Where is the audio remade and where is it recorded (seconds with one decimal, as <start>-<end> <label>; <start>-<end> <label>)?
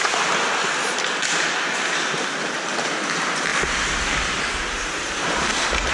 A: 0.0-5.9 recorded